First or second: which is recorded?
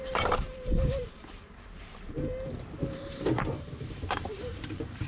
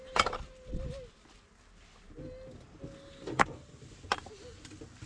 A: second